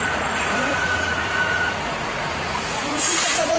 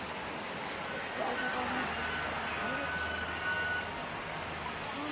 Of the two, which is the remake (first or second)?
first